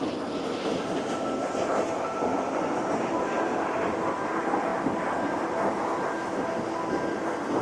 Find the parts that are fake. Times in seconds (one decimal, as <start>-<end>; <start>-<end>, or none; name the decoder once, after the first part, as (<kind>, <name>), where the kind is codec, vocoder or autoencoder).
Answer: 2.3-2.9 (vocoder, Vocos)

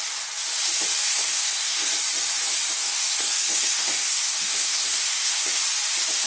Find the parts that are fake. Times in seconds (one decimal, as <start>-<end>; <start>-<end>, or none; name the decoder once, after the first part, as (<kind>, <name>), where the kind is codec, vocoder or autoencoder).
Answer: 1.1-1.9 (codec, SNAC); 2.8-5.6

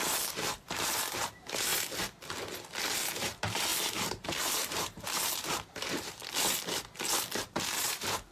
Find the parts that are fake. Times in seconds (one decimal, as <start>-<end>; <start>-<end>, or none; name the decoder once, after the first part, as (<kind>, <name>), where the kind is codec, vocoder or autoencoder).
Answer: 0.0-1.7 (vocoder, BigVGAN v2); 2.8-6.2; 7.6-8.3

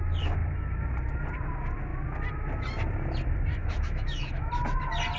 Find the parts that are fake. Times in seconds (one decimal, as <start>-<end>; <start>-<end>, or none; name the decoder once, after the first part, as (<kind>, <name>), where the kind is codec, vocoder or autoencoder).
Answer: 3.5-4.5 (autoencoder, DAC-VAE)

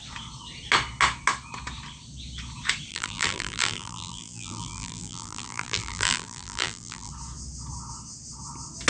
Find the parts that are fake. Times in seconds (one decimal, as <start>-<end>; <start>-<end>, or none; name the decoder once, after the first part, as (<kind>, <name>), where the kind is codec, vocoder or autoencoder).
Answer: 2.9-7.1 (vocoder, BigVGAN v2)